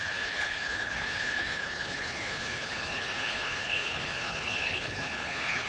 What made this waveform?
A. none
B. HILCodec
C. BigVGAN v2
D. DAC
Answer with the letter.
B